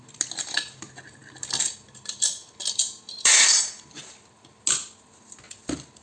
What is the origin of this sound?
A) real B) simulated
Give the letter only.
A